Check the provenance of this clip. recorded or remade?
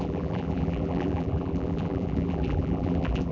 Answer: remade